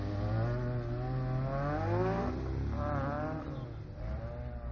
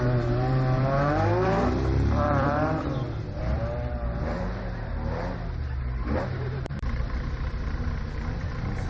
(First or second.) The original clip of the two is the first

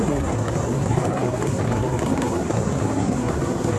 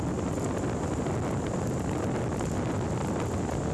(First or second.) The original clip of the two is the second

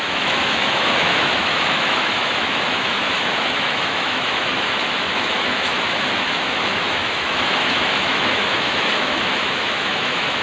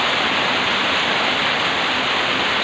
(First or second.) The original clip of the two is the second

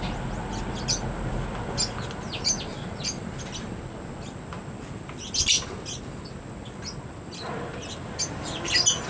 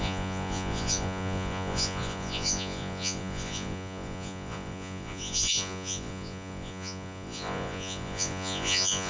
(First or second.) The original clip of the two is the first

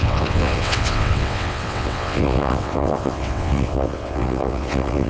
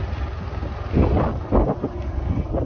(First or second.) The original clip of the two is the second